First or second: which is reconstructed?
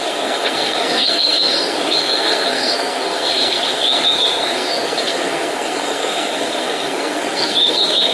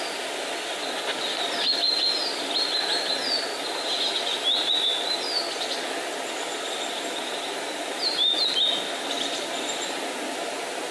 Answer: first